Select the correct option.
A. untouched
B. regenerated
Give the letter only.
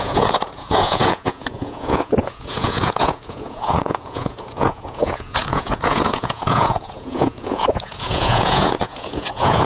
B